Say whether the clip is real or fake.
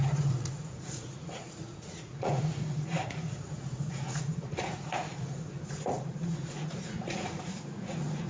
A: fake